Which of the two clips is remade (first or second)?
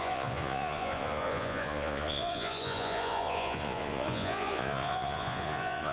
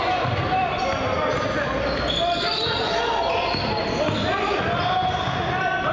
first